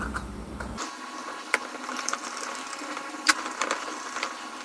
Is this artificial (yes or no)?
yes